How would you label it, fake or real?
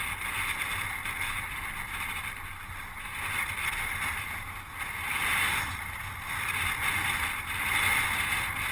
real